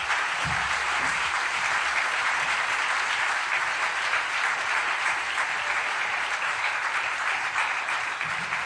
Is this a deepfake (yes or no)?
yes